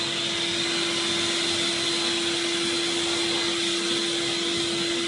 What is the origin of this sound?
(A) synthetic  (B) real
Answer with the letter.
B